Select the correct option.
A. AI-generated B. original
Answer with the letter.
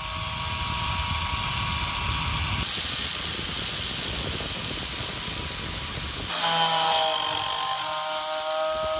B